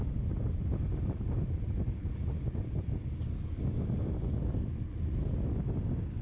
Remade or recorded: recorded